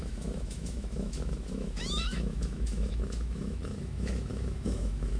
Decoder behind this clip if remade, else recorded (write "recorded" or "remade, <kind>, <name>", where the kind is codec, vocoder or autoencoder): remade, autoencoder, DAC-VAE